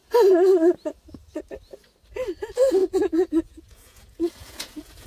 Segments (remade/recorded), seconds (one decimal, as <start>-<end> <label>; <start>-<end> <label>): 0.0-2.8 recorded; 2.8-5.1 remade